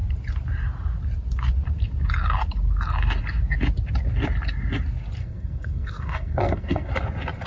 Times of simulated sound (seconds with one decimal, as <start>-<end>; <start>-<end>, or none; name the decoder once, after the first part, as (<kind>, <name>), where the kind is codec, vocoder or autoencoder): 5.2-6.9 (codec, SNAC)